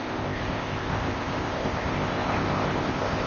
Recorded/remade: remade